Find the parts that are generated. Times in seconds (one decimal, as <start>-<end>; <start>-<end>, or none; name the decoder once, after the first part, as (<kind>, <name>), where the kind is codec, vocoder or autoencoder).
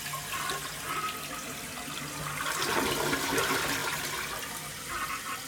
none